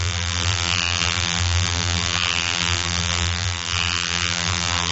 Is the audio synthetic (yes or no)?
yes